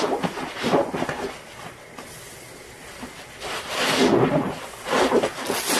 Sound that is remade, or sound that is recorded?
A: recorded